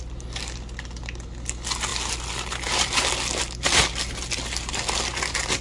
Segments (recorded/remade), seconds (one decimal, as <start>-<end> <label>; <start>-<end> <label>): 0.0-5.6 recorded